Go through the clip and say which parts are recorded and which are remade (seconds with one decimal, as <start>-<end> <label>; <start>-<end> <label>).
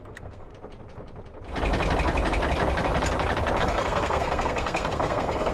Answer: 0.0-0.5 remade; 0.5-3.6 recorded; 3.6-5.5 remade